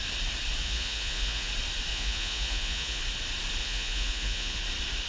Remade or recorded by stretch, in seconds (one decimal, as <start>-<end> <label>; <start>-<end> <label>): 0.0-0.6 recorded; 0.6-1.5 remade; 1.5-1.9 recorded; 1.9-3.0 remade; 3.0-3.6 recorded; 3.6-4.6 remade; 4.6-5.1 recorded